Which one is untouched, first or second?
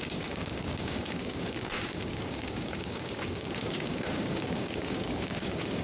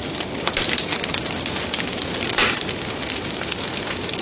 second